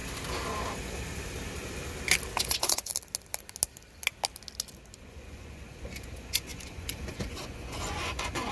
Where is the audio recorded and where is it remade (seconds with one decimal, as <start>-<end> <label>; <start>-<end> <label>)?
0.0-2.4 recorded; 2.4-2.9 remade; 2.9-5.0 recorded; 5.0-8.5 remade